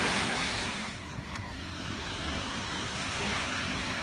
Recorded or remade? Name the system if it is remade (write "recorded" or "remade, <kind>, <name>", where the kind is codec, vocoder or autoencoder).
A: remade, codec, SNAC